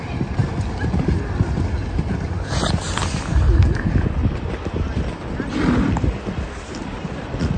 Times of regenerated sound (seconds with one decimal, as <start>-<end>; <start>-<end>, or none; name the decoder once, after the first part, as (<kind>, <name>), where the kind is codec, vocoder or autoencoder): 0.4-0.9 (vocoder, BigVGAN v2); 4.2-4.7